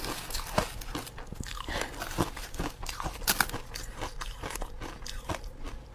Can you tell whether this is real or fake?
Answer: real